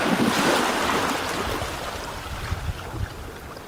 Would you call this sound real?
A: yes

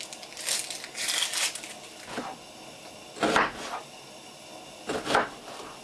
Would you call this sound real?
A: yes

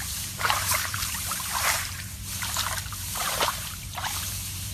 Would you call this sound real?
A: no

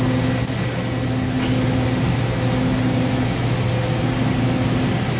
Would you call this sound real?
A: yes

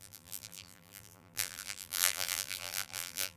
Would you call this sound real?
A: no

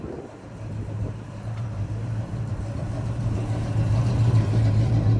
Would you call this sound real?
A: no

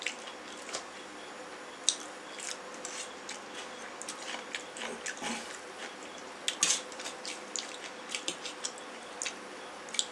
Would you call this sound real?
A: yes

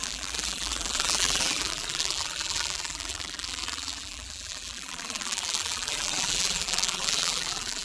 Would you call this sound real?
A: no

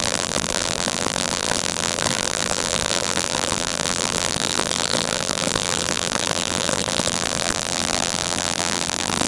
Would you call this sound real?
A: no